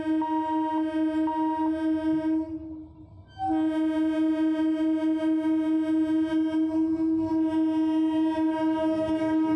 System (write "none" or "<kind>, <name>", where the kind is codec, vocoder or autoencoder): none